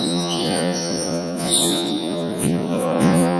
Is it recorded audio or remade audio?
remade